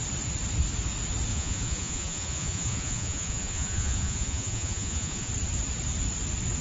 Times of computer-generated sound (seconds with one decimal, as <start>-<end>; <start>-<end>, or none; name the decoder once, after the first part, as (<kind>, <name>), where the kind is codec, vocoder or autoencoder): 1.3-5.3 (vocoder, Vocos)